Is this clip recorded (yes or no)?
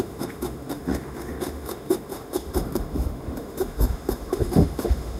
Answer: no